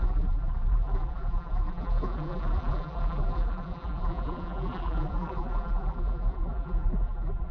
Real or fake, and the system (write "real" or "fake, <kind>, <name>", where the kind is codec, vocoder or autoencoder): fake, vocoder, BigVGAN v2